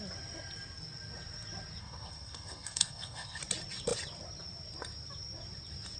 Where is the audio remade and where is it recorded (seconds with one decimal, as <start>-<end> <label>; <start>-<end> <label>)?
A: 0.0-1.8 recorded; 1.8-3.4 remade; 3.4-6.0 recorded